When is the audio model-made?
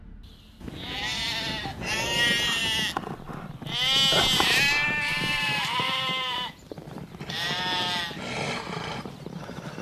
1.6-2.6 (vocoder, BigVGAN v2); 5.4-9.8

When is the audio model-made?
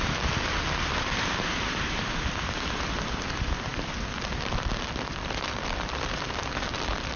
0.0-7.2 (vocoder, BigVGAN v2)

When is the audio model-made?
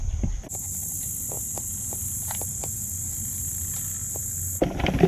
none